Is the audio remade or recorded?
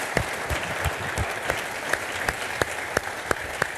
remade